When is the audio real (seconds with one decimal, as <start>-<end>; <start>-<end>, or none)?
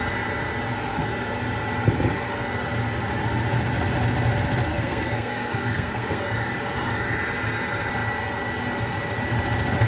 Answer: 0.0-4.7; 6.2-9.9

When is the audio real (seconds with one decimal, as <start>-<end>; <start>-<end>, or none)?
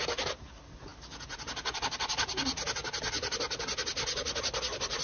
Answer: 0.0-5.0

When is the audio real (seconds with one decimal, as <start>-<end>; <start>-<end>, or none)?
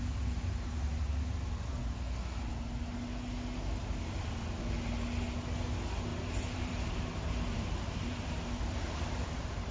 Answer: 0.0-6.1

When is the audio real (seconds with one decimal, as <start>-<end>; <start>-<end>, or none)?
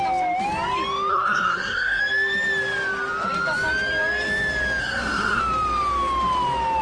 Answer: 0.0-1.1; 2.0-4.8; 5.4-6.8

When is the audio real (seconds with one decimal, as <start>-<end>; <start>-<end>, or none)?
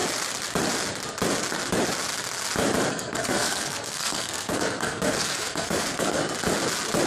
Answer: 0.0-2.9; 6.2-7.1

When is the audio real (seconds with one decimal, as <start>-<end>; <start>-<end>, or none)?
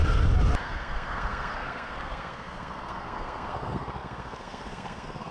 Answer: 0.0-0.6